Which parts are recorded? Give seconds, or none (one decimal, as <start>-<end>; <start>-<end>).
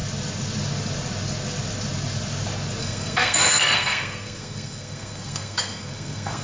0.0-2.8